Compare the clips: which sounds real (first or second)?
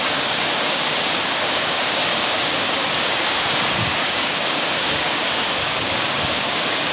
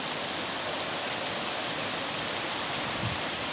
second